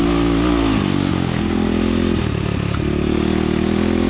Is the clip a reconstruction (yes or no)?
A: no